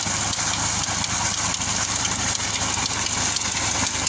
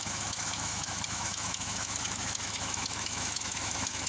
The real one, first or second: first